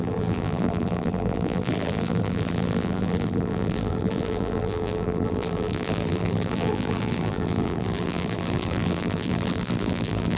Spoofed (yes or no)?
yes